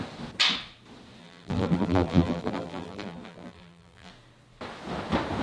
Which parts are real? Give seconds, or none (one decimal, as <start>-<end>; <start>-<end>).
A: 0.0-1.2; 4.1-5.4